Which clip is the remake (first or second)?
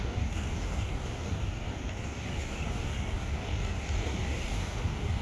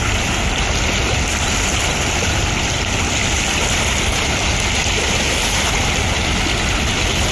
first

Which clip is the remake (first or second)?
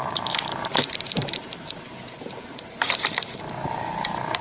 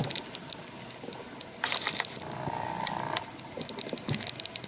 first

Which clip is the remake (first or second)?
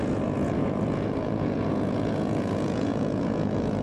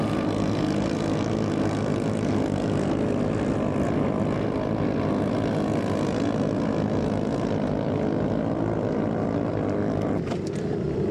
first